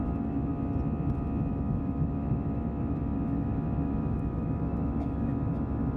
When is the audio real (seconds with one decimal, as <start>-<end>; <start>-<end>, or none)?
0.5-1.5